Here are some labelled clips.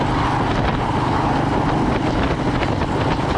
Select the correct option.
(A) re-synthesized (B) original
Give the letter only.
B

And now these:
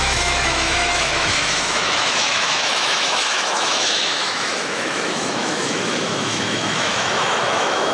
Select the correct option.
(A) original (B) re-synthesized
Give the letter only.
B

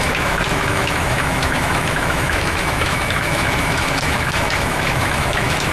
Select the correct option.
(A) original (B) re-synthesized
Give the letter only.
B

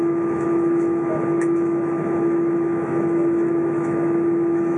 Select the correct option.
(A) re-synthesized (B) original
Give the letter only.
A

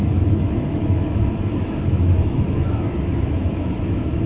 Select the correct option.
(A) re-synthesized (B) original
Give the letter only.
A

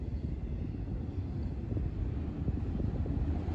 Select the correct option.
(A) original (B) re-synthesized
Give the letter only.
A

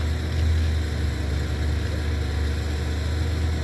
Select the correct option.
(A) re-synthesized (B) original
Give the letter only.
B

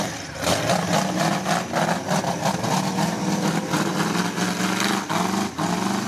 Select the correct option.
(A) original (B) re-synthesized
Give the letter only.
A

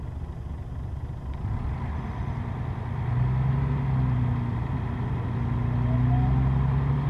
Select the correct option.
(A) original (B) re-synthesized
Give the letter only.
A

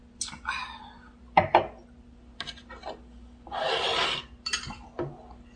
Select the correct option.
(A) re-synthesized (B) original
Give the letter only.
B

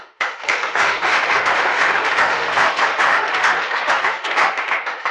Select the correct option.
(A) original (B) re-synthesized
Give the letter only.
B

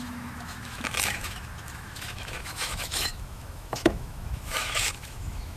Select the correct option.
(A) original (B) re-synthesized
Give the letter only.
B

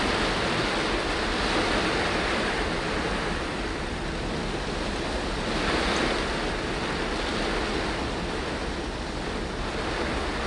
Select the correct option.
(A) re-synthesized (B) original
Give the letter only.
B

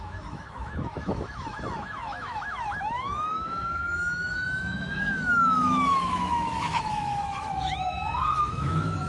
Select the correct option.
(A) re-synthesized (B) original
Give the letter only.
A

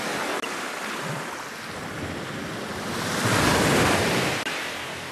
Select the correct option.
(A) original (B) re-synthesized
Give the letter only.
A